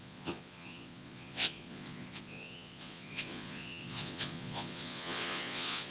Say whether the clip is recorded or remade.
remade